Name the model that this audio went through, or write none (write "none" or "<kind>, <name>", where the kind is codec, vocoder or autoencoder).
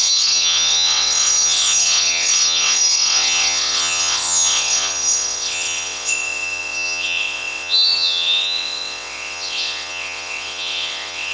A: vocoder, WaveNeXt